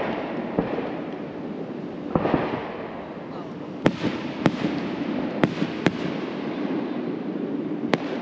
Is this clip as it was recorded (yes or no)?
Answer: yes